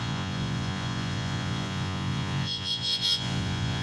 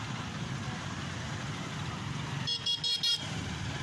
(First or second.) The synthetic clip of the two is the first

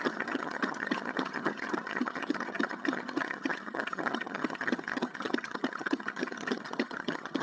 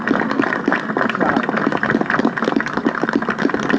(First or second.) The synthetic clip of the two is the first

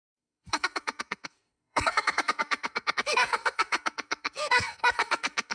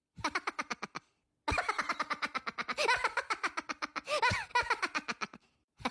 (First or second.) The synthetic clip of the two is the first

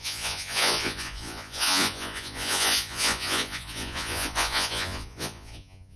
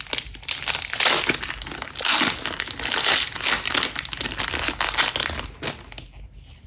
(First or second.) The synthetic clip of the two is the first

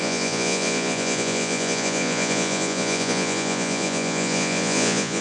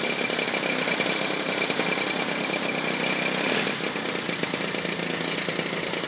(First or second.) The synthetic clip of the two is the first